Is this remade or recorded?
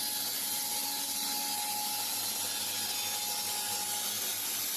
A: recorded